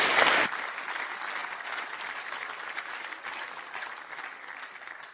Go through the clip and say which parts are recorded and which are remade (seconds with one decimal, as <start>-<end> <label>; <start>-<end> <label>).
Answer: 0.0-5.1 recorded